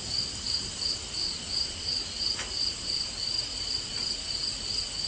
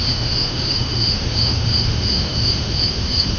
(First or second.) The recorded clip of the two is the first